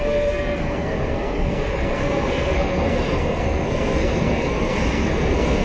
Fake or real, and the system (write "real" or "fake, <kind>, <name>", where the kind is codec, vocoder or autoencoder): fake, codec, SNAC